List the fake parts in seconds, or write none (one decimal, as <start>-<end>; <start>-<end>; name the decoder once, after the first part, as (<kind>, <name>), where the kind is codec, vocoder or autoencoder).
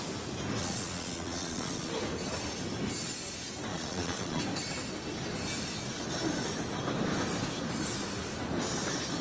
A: 0.6-1.9 (vocoder, Vocos); 3.7-4.4